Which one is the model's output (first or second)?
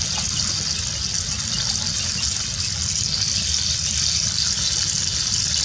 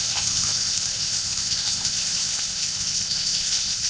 second